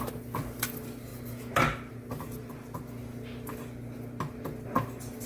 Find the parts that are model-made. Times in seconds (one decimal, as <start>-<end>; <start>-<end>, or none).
none